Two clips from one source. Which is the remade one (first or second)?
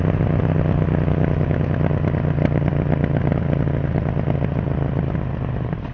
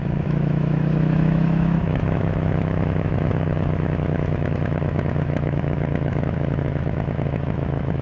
second